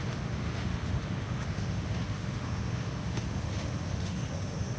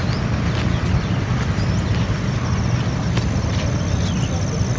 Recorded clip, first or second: second